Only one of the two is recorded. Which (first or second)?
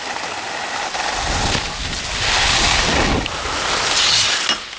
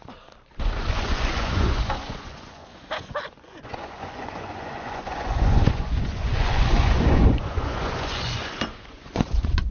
first